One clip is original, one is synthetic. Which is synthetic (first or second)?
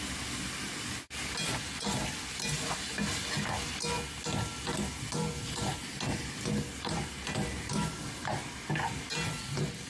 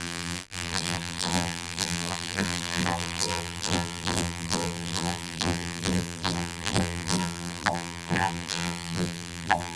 second